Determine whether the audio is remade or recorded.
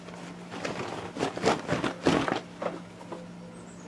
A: recorded